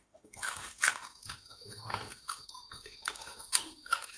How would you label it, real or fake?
fake